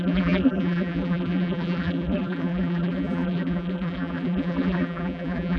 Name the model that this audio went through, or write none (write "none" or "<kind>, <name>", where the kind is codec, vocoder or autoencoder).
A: vocoder, BigVGAN v2